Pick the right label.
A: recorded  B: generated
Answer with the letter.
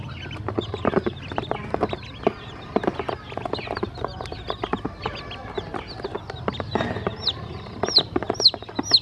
A